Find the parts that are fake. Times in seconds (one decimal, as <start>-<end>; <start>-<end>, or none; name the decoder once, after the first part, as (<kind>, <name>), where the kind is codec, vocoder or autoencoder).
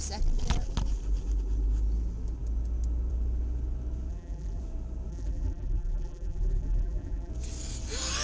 4.1-4.6 (vocoder, BigVGAN v2); 5.1-7.3